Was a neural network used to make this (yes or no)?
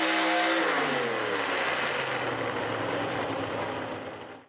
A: no